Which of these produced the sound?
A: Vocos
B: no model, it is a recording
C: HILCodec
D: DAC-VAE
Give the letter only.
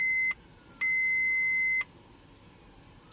B